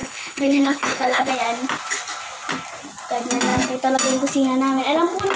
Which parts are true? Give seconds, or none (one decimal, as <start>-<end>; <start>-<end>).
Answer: 1.3-5.4